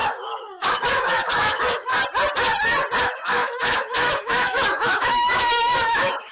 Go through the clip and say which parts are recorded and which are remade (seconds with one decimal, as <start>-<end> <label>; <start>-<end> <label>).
0.0-1.9 remade; 1.9-3.0 recorded; 3.0-6.3 remade